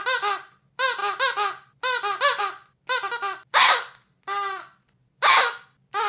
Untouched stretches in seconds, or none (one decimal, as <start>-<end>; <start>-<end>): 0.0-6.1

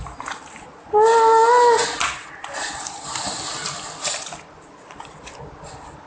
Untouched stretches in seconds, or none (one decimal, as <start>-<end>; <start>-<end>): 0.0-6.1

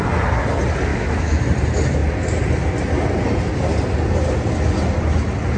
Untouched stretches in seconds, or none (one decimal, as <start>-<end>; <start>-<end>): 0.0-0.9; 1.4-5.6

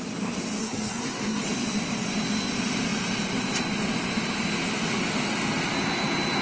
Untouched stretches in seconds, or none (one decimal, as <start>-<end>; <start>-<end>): 0.0-0.6; 1.4-6.4

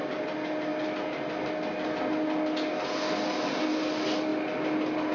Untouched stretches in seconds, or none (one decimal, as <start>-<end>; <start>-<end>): 0.0-5.1

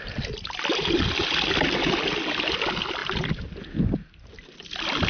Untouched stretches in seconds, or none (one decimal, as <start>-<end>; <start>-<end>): 0.0-3.0; 3.6-5.1

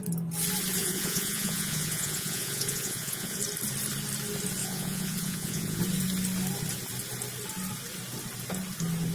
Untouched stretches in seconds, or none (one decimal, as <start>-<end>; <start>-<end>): 0.0-0.8; 3.4-4.6; 5.8-9.1

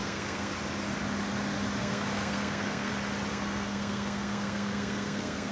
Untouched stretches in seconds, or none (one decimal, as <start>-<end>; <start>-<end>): 0.5-1.8; 2.9-3.3